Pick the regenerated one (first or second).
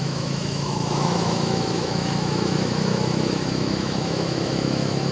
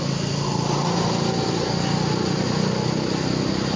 first